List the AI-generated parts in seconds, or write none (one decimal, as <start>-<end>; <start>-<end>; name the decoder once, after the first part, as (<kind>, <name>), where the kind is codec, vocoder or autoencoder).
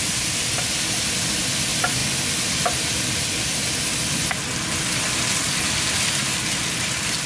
none